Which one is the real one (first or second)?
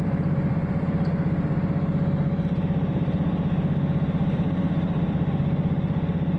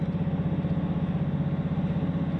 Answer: second